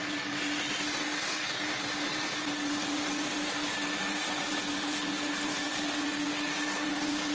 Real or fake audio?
real